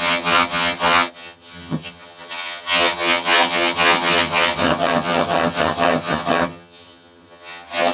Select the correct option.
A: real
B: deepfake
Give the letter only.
B